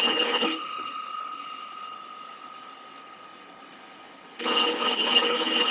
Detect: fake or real fake